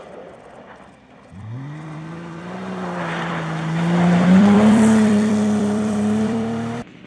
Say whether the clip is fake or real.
fake